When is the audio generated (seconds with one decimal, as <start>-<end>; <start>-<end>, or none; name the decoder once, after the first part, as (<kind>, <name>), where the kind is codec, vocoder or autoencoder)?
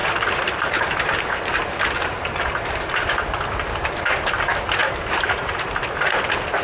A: 0.0-2.9 (vocoder, BigVGAN v2); 4.8-5.8